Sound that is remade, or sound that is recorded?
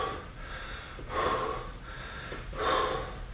recorded